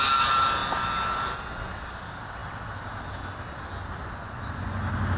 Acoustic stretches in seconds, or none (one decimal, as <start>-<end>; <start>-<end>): 0.0-4.0; 4.8-5.2